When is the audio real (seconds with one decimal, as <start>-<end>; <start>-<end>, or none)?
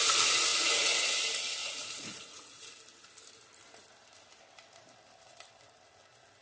0.0-0.5; 1.2-1.6; 2.6-6.4